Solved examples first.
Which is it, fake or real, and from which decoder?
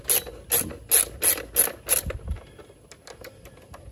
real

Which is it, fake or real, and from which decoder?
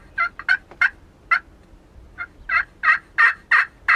real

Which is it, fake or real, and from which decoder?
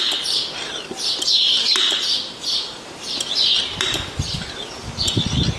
real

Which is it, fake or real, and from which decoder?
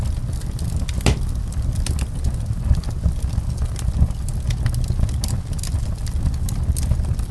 real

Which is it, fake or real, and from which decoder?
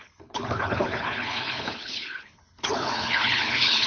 fake, codec, HILCodec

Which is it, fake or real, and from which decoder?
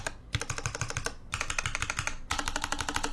real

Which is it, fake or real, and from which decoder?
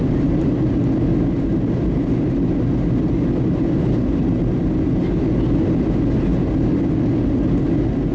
real